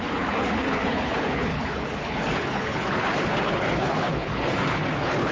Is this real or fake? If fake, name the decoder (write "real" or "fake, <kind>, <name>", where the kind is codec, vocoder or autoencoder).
fake, codec, HILCodec